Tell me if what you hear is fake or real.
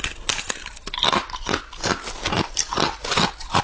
real